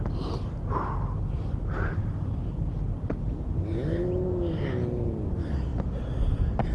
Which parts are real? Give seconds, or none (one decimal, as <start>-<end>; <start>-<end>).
0.0-6.7